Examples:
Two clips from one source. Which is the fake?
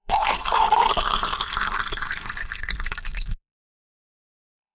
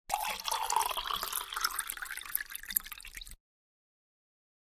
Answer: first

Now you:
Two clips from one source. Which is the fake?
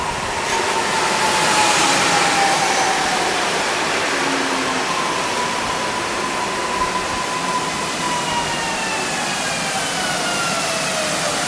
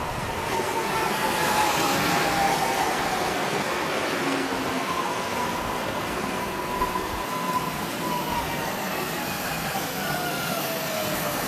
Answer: second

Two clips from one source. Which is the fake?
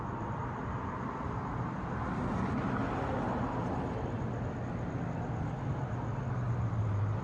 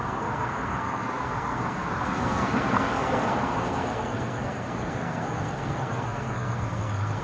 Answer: second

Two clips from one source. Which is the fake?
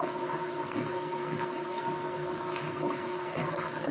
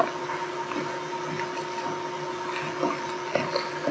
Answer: first